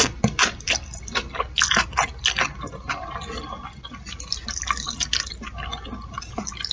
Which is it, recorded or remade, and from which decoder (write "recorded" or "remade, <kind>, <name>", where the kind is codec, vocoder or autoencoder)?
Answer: recorded